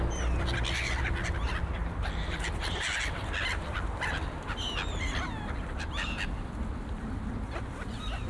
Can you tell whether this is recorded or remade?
recorded